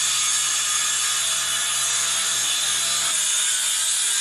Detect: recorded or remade recorded